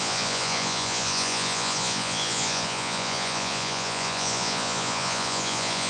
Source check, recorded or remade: remade